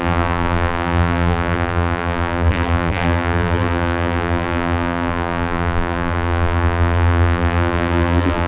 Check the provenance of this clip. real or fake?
fake